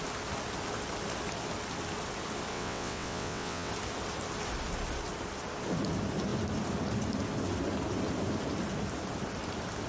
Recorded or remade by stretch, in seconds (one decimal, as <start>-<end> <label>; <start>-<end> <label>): 0.0-2.5 recorded; 2.5-3.7 remade; 3.7-9.9 recorded